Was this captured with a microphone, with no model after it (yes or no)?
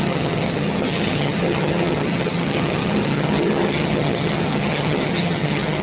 no